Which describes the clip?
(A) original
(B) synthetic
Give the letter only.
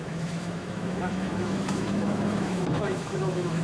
B